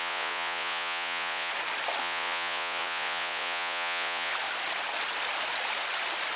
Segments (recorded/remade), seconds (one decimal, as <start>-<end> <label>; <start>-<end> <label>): 0.0-1.5 remade; 1.5-2.0 recorded; 2.0-4.3 remade; 4.3-6.4 recorded